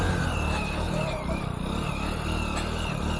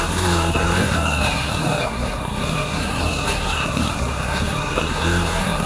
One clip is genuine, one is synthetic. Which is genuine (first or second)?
first